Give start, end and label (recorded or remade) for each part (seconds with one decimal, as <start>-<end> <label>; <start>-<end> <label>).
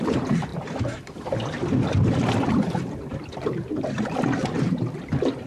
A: 0.0-5.5 remade